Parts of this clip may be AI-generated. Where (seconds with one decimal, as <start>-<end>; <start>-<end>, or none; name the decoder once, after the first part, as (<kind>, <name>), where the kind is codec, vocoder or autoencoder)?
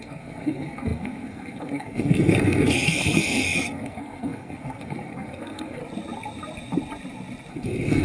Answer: 0.0-5.8 (codec, SNAC); 7.5-8.0